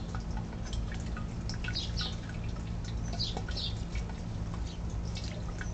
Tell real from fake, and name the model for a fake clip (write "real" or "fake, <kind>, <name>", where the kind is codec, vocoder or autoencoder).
real